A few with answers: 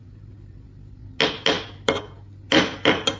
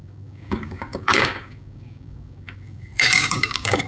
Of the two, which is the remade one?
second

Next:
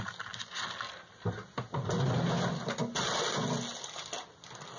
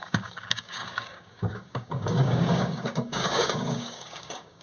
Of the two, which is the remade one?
second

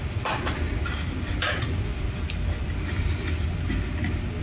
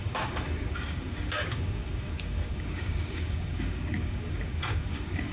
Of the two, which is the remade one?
second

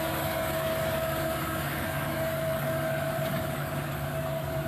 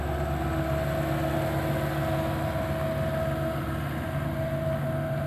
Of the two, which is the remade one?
first